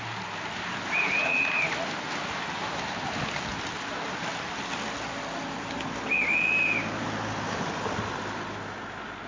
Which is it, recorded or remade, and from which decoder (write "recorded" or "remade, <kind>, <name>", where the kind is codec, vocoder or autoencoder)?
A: recorded